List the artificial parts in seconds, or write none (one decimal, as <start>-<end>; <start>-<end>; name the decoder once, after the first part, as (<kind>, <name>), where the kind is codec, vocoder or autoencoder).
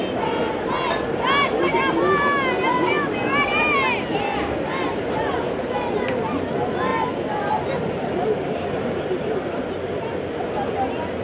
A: none